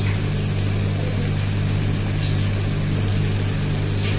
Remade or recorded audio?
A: recorded